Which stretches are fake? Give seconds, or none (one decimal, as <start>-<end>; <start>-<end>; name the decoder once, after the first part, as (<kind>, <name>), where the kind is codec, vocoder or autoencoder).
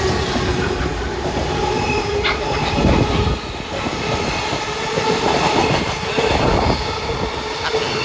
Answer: none